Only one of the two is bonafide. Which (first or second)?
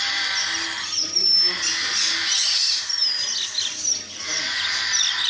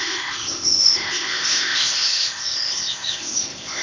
first